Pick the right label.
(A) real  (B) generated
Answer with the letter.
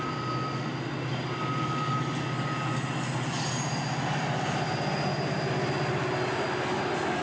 A